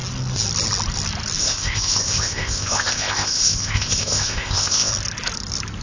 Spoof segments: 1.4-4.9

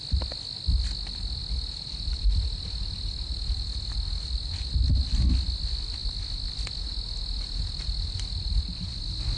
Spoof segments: none

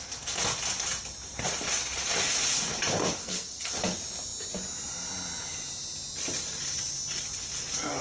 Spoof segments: 3.2-3.7

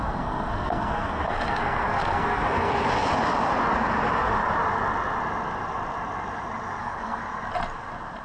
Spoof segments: 0.0-2.7; 6.8-7.2